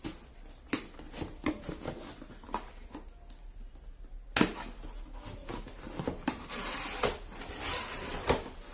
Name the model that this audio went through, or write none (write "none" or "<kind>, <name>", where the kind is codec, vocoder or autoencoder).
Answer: none